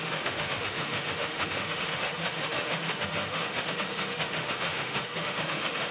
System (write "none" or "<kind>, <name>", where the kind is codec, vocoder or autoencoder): autoencoder, DAC-VAE